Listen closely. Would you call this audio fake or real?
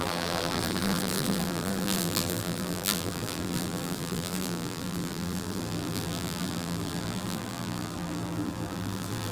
fake